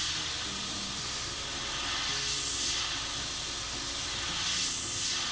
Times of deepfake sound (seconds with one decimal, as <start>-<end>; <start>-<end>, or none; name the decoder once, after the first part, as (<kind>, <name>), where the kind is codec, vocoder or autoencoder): none